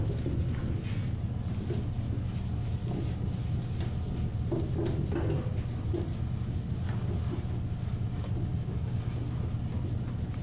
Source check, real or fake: real